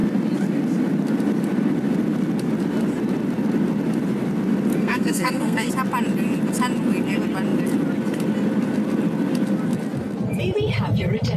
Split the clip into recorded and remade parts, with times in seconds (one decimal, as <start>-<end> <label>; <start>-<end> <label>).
0.0-4.8 recorded; 4.8-5.7 remade; 5.7-11.4 recorded